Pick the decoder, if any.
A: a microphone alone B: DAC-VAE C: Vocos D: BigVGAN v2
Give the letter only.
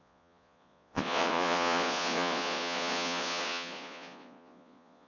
C